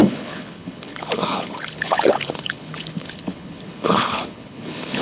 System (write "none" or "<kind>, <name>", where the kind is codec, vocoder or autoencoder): codec, HILCodec